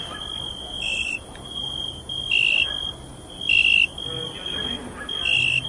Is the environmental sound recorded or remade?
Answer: recorded